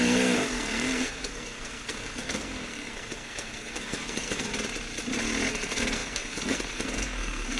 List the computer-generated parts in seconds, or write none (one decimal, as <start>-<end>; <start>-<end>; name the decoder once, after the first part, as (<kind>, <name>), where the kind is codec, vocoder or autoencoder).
0.0-4.5 (codec, SNAC); 5.5-7.6